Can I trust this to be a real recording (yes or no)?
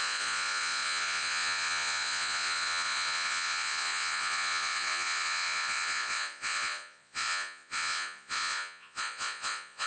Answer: no